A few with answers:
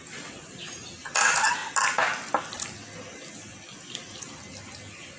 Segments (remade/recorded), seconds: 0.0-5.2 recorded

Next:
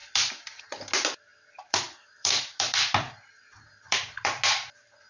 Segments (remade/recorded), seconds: 0.0-0.6 remade; 0.6-1.3 recorded; 1.3-4.4 remade; 4.4-5.1 recorded

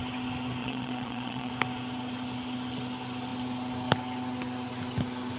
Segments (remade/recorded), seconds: 0.0-0.6 recorded; 0.6-1.5 remade; 1.5-5.4 recorded